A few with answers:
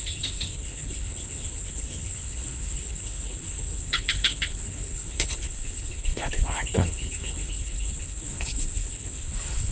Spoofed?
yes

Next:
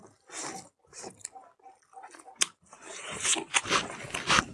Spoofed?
no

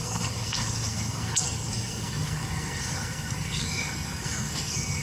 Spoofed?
yes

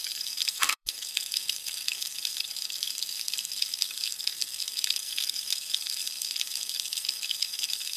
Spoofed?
yes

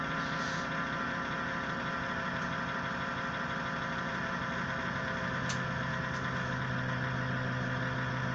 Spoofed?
no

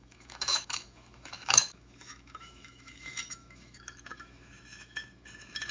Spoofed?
yes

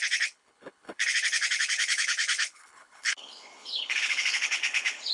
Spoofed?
yes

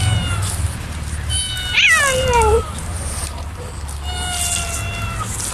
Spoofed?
no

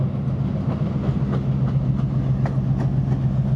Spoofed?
no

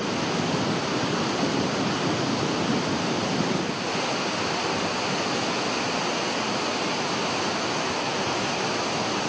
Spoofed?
no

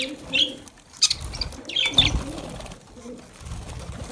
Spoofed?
no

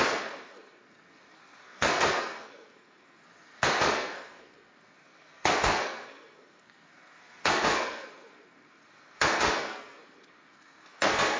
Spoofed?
yes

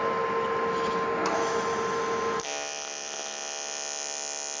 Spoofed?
no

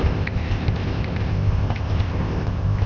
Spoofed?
yes